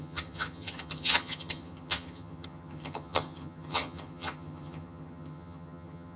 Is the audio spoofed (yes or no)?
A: yes